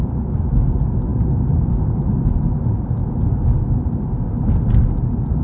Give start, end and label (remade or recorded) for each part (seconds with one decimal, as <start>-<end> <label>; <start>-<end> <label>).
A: 0.0-5.4 recorded